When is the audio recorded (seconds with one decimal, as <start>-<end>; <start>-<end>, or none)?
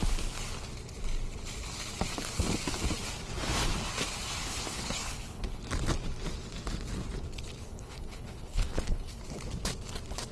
0.0-4.4; 5.6-7.6; 9.2-10.3